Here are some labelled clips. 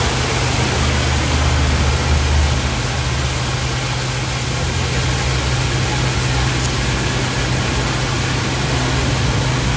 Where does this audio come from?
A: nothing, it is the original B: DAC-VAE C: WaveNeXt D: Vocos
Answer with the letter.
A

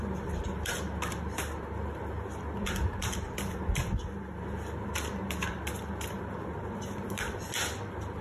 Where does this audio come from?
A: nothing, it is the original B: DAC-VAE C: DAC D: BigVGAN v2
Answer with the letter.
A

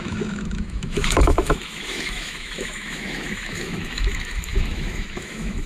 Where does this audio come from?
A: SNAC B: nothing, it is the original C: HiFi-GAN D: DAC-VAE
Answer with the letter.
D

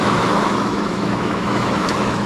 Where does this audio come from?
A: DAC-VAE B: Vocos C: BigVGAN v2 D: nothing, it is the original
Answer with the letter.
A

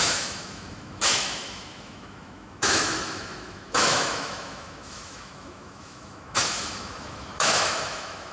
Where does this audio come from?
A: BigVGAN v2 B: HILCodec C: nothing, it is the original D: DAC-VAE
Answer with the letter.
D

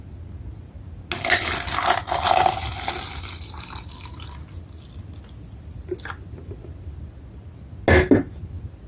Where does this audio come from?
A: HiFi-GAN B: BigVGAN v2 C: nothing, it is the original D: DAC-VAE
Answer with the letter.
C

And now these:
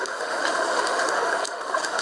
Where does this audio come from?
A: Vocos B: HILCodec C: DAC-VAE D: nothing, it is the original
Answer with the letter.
C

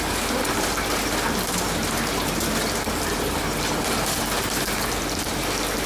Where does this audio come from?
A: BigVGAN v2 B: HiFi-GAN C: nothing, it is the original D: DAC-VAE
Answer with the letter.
C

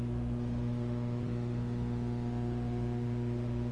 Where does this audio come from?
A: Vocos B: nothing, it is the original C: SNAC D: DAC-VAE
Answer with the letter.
D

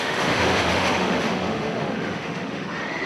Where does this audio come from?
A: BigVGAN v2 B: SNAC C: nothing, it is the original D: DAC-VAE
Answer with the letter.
D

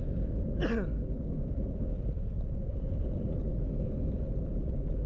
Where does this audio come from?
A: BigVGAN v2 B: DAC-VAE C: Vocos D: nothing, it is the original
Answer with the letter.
D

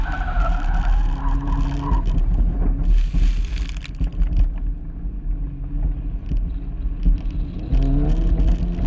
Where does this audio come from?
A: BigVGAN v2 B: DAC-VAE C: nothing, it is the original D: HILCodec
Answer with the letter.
C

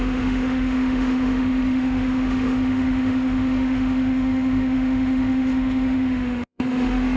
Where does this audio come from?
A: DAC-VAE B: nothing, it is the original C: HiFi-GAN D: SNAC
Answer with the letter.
A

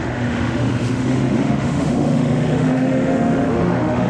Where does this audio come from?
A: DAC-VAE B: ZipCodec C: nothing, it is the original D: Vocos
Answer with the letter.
A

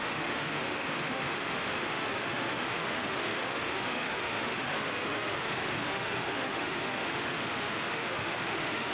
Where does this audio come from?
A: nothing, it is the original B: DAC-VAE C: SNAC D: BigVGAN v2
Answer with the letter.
B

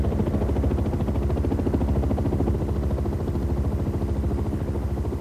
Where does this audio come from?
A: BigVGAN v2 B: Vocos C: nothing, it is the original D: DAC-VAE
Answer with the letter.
C